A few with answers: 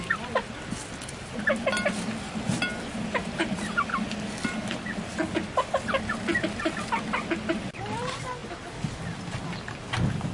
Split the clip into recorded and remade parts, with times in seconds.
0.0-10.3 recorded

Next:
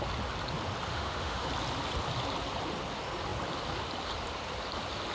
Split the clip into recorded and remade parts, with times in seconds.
0.0-0.9 recorded; 0.9-1.5 remade; 1.5-5.1 recorded

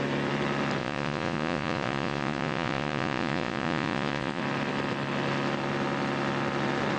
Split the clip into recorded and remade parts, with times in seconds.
0.0-0.8 recorded; 0.8-4.4 remade; 4.4-7.0 recorded

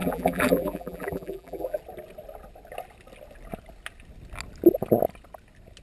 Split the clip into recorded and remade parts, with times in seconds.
0.0-1.8 remade; 1.8-5.8 recorded

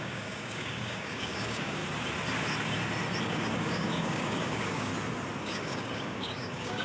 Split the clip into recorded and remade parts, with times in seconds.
0.0-1.8 remade; 1.8-3.2 recorded; 3.2-4.9 remade; 4.9-5.4 recorded; 5.4-6.8 remade

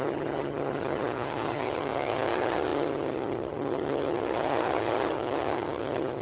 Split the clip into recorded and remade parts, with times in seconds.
0.0-6.2 remade

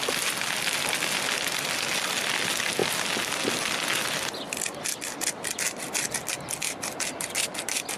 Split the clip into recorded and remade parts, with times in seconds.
0.0-8.0 recorded

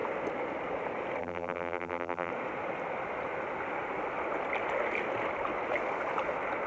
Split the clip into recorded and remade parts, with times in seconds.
0.0-1.2 recorded; 1.2-2.3 remade; 2.3-6.7 recorded